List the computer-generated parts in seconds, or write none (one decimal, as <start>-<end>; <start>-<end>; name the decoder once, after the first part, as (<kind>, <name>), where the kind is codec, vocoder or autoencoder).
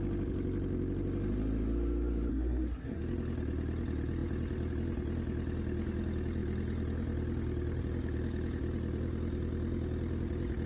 2.3-3.0 (codec, SNAC)